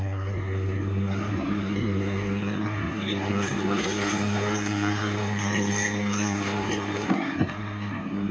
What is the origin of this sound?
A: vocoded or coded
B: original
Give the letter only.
A